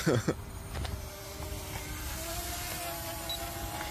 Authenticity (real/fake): real